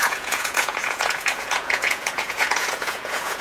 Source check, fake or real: fake